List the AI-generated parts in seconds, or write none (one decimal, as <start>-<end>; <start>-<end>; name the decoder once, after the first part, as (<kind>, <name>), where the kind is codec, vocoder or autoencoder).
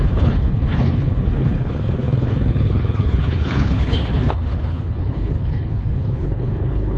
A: 0.0-7.0 (codec, HILCodec)